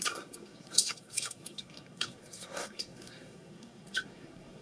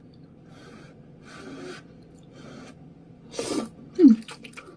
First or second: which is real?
second